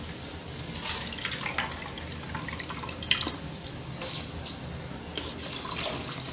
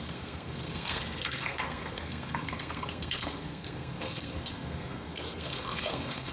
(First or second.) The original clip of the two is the first